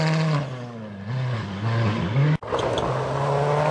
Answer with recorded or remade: recorded